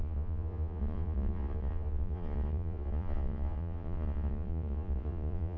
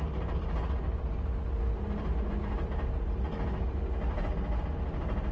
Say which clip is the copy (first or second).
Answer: first